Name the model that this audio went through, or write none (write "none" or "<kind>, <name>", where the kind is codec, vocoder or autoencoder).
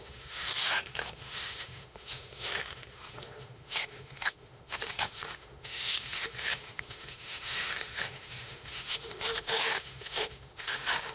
autoencoder, DAC-VAE